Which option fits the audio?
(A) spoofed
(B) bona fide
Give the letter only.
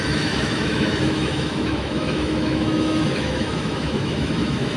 A